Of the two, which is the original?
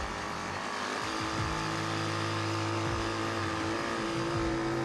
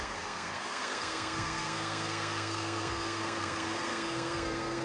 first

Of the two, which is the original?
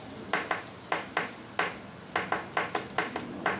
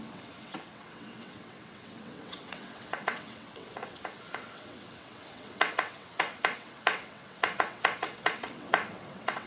first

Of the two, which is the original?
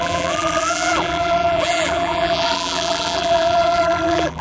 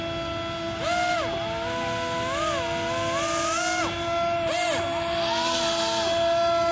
second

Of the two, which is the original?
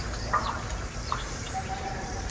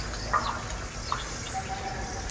second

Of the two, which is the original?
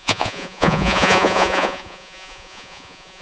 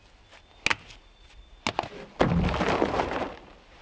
second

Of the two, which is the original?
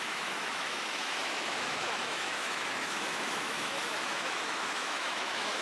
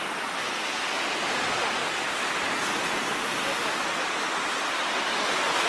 second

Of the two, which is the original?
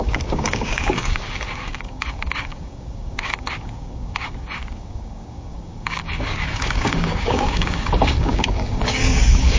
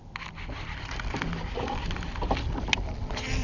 second